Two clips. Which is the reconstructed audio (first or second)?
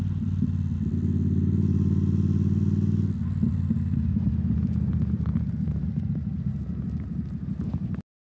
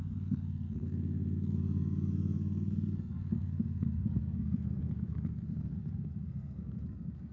second